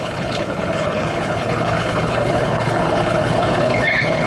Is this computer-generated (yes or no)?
yes